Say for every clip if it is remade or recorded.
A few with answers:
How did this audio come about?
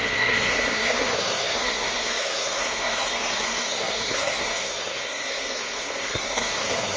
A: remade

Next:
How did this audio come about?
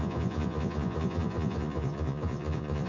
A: remade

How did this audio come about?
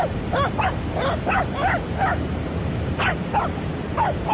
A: recorded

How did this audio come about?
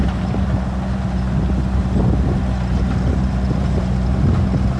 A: recorded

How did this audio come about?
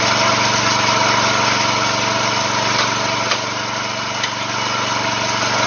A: recorded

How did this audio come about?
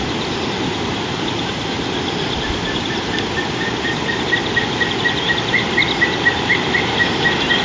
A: recorded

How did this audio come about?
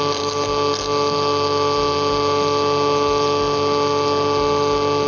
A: recorded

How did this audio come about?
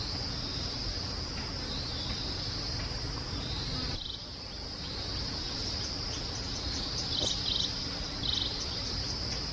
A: recorded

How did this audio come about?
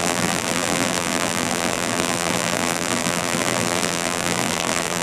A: remade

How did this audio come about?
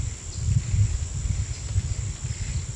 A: recorded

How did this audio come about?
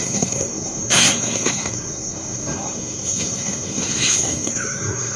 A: remade